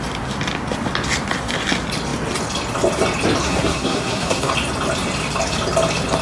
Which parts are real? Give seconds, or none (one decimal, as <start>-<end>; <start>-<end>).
0.0-3.4; 4.5-6.2